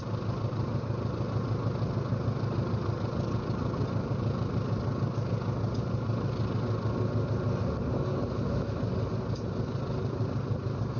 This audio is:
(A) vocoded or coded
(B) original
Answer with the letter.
B